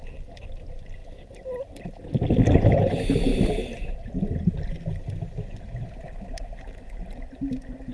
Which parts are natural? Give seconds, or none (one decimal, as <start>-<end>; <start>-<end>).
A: 0.0-7.9